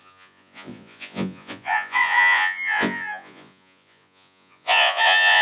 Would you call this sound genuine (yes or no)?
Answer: no